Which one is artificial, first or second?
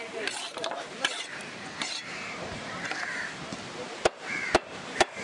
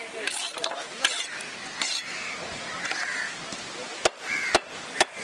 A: first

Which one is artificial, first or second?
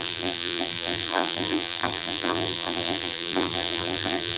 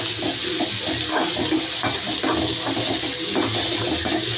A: first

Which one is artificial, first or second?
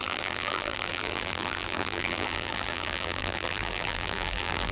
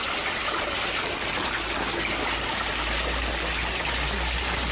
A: first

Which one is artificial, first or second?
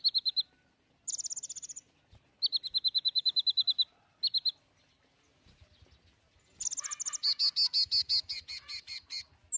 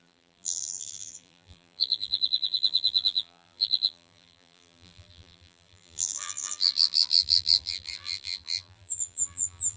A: second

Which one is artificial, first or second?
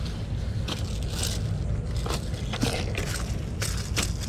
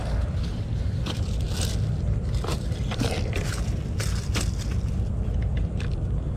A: second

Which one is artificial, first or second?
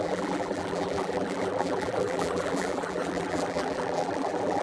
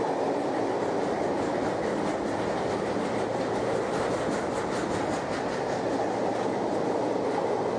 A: first